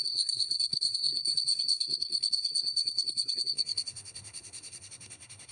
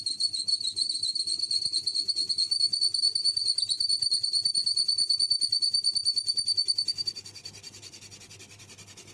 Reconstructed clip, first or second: first